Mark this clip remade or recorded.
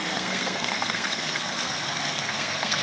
remade